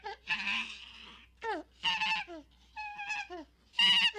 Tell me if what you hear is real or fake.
real